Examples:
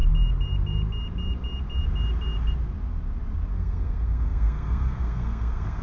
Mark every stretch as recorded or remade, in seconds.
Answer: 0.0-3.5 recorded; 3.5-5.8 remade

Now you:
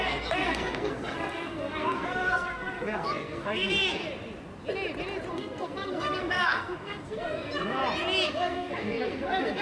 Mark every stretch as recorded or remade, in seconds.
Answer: 0.0-4.0 remade; 4.0-5.3 recorded; 5.3-7.8 remade; 7.8-8.3 recorded; 8.3-9.6 remade